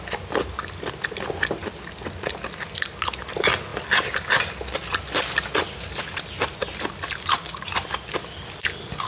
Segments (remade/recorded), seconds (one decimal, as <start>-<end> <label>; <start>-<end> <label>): 0.0-9.1 recorded